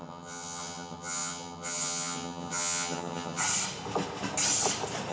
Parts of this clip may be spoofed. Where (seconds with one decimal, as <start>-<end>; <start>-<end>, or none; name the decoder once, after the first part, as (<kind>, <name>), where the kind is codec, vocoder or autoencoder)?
0.0-3.4 (vocoder, HiFi-GAN)